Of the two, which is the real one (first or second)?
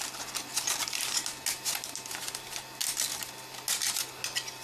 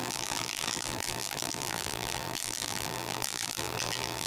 first